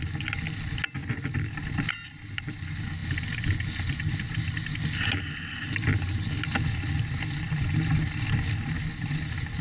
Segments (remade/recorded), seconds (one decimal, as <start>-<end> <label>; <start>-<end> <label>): 0.0-1.0 recorded; 1.0-1.9 remade; 1.9-9.6 recorded